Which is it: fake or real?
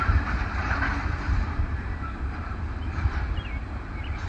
fake